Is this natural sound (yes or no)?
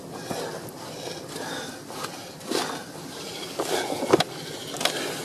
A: yes